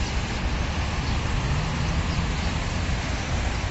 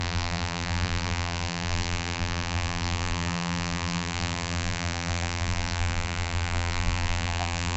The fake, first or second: second